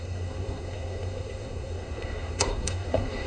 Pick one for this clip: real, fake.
fake